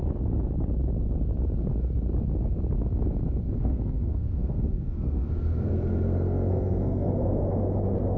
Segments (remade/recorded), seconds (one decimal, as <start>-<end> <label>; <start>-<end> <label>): 0.0-3.6 recorded; 3.6-7.4 remade; 7.4-8.2 recorded